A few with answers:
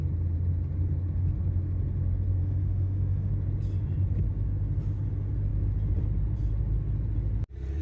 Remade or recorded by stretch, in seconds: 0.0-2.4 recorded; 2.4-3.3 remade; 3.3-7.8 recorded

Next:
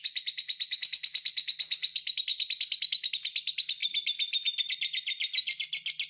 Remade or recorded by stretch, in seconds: 0.0-6.1 recorded